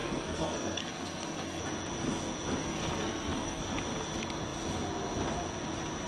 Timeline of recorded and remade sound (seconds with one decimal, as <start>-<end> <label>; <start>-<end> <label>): 0.0-1.6 remade; 1.6-2.6 recorded; 2.6-3.8 remade; 3.8-6.1 recorded